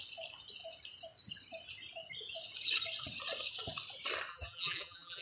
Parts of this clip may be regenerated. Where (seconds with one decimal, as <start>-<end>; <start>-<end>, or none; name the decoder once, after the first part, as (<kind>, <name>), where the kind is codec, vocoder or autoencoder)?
4.3-5.2 (vocoder, BigVGAN v2)